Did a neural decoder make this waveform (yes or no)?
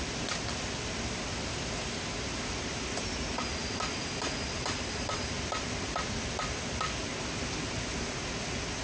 no